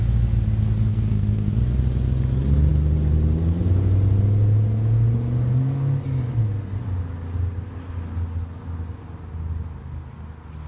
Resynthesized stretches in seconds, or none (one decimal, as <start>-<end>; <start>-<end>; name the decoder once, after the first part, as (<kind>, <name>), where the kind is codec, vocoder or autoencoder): 0.9-1.5 (codec, SNAC)